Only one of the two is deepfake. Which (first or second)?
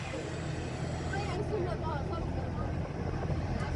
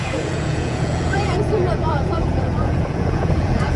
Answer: second